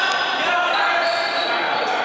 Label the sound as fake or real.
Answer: real